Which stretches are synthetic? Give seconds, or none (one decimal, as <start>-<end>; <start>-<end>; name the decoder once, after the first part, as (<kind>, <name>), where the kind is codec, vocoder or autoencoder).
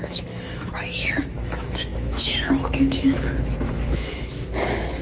0.0-5.0 (autoencoder, DAC-VAE)